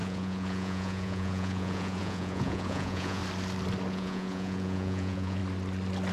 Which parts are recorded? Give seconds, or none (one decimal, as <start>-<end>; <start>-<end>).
3.2-3.9; 5.4-6.1